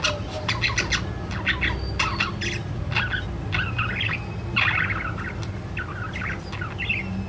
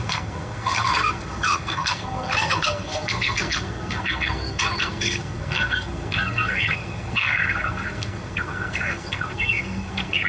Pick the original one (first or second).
first